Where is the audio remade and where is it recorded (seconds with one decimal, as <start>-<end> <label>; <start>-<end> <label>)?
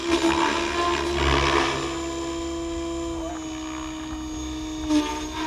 0.0-5.5 recorded